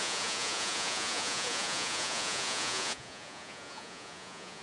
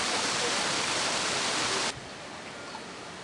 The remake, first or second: first